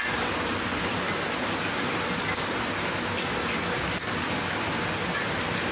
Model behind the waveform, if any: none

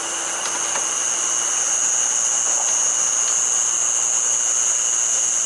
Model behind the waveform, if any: none